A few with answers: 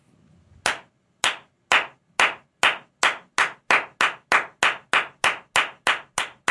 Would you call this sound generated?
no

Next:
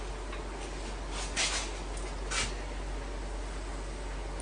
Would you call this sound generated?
no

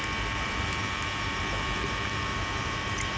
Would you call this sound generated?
yes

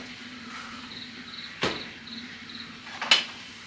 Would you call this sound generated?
no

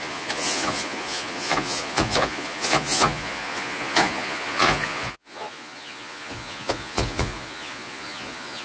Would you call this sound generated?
yes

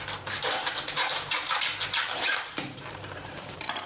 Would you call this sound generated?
yes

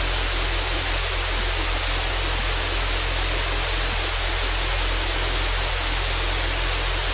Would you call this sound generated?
no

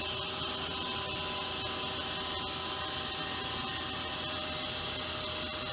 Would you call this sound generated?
no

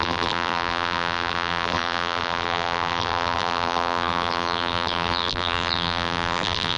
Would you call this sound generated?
yes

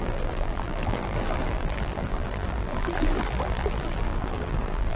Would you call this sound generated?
yes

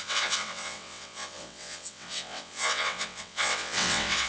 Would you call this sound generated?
yes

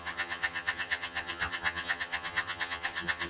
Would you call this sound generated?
yes